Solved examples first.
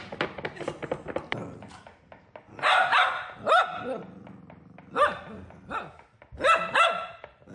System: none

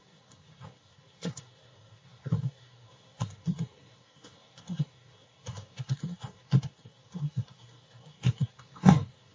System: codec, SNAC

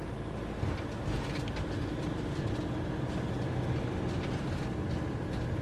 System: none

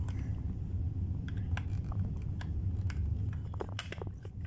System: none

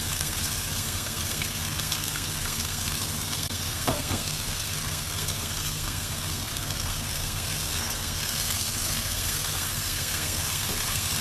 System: codec, SNAC